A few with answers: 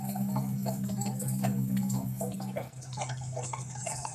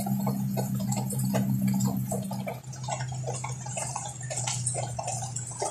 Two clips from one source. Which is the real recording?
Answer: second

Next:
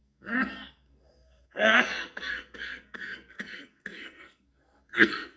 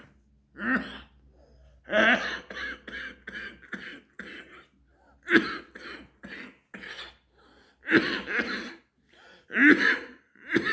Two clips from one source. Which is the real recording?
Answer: second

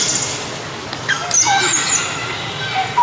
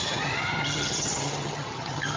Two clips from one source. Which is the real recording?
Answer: first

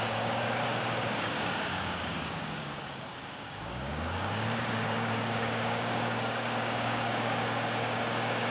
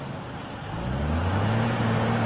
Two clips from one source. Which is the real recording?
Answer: second